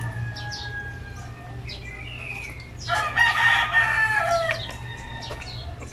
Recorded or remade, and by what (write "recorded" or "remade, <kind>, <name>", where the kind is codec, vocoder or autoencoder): recorded